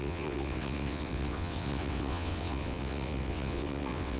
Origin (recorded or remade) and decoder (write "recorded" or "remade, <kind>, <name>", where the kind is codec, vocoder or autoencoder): remade, vocoder, WaveNeXt